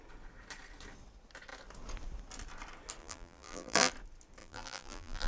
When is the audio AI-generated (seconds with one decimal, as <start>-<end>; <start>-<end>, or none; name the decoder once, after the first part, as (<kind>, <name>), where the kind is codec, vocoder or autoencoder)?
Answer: 3.0-3.9 (vocoder, BigVGAN v2); 4.4-5.3